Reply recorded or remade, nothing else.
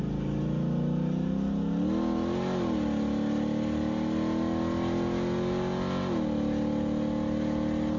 recorded